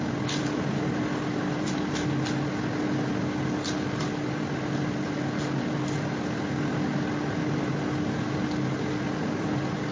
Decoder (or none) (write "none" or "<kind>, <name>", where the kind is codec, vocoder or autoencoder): none